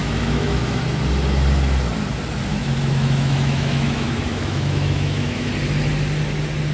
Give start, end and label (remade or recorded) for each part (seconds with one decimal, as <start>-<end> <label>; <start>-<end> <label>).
0.0-0.8 remade; 0.8-2.5 recorded; 2.5-5.5 remade; 5.5-6.7 recorded